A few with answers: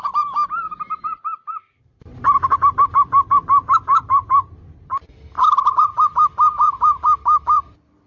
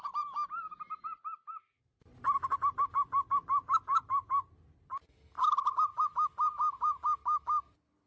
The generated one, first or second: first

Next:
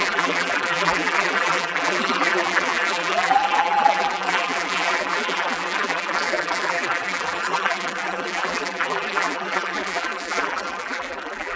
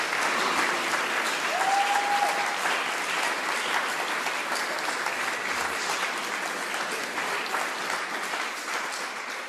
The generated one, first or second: first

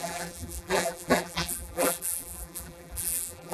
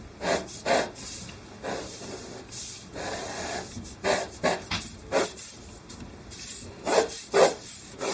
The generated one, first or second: first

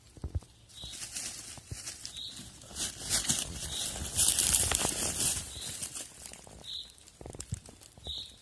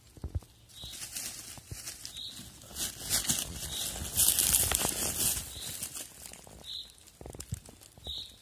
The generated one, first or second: first